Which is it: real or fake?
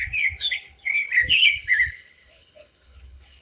fake